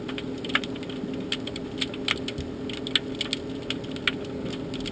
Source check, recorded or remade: recorded